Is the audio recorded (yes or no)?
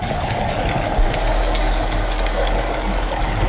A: no